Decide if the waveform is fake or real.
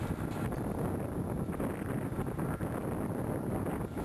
real